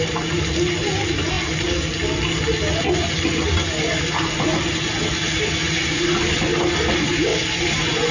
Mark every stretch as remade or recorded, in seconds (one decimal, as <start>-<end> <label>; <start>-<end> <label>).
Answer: 0.0-8.1 recorded